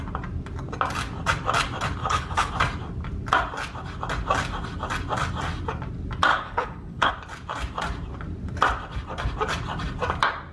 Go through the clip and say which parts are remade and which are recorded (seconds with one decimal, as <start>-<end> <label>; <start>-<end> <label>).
0.0-2.0 recorded; 2.0-2.5 remade; 2.5-6.3 recorded; 6.3-7.1 remade; 7.1-10.5 recorded